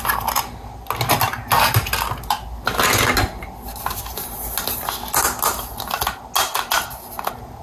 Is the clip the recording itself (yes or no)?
yes